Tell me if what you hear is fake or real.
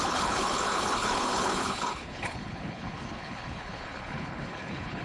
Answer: fake